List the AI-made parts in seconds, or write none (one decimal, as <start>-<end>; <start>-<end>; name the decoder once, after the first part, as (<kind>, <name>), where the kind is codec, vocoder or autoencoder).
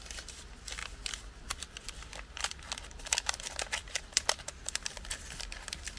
none